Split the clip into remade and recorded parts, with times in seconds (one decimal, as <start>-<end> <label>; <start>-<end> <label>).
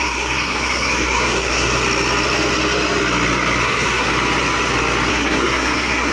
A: 0.0-1.8 remade; 1.8-3.6 recorded; 3.6-4.1 remade; 4.1-5.1 recorded; 5.1-6.1 remade